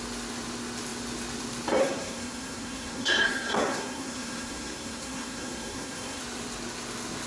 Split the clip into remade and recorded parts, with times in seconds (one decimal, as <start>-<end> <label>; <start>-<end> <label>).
0.0-1.8 recorded; 1.8-6.2 remade; 6.2-7.3 recorded